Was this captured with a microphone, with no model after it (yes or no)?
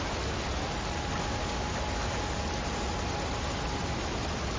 yes